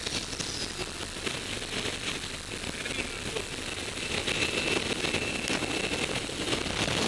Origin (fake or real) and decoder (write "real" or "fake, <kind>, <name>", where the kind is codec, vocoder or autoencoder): real